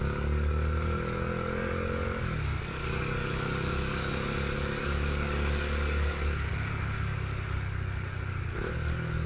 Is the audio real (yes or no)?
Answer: no